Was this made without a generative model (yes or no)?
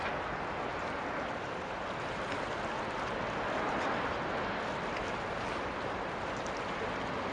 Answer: yes